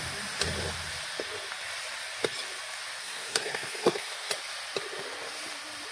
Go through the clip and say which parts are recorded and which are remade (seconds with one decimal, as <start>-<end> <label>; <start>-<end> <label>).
0.0-3.0 recorded; 3.0-4.3 remade; 4.3-5.9 recorded